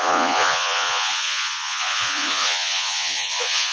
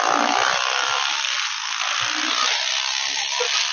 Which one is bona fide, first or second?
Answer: second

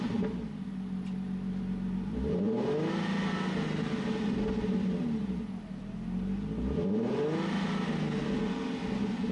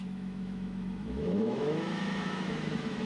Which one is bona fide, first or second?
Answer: first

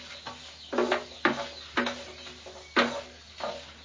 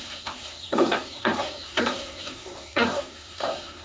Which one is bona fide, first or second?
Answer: first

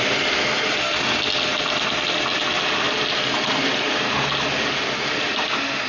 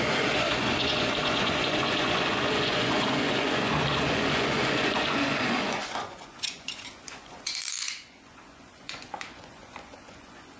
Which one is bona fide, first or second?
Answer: first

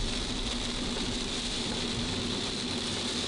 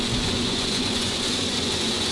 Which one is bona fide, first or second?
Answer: first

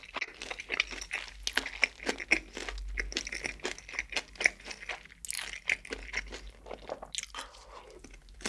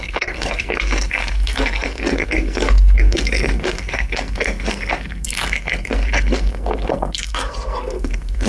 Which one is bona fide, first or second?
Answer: first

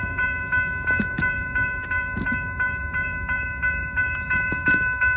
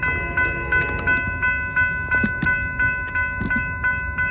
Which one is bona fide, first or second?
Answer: second